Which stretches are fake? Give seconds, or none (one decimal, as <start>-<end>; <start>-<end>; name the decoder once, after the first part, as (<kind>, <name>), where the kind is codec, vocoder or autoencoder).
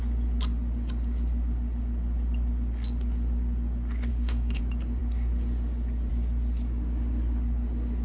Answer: 4.1-4.6 (autoencoder, DAC-VAE)